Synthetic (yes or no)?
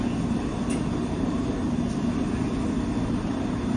no